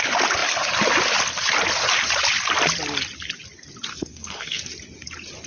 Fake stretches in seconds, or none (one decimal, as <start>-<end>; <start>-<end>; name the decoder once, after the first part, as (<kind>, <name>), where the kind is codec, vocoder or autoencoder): 3.9-4.6 (codec, SNAC)

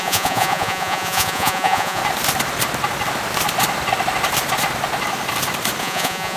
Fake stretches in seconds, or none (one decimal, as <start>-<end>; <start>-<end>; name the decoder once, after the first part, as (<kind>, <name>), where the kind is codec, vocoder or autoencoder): 0.0-2.0 (vocoder, Vocos); 5.8-6.4

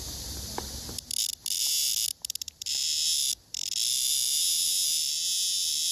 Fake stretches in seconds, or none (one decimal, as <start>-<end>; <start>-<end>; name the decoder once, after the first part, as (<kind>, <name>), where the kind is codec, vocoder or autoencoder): none